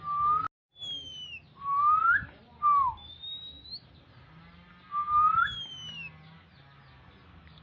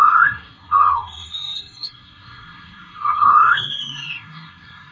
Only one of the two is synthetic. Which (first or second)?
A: second